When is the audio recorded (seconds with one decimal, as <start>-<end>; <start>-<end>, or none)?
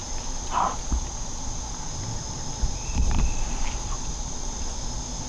0.0-2.9; 4.1-5.3